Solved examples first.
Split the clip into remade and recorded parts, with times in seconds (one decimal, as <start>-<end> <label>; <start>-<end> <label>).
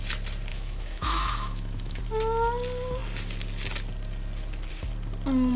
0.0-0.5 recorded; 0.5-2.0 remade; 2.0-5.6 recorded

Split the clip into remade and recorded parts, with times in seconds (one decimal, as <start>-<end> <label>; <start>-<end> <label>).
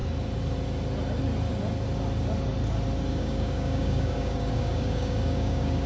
0.0-3.1 recorded; 3.1-5.9 remade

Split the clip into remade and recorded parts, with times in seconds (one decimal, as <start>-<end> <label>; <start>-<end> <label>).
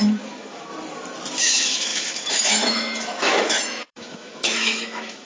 0.0-0.7 remade; 0.7-1.4 recorded; 1.4-5.2 remade